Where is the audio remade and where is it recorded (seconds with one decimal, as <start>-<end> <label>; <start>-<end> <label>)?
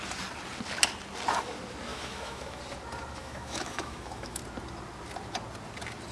0.0-1.9 recorded; 1.9-2.6 remade; 2.6-3.2 recorded; 3.2-4.4 remade; 4.4-6.1 recorded